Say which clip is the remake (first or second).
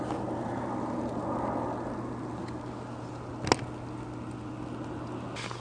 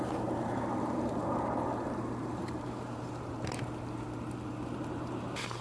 second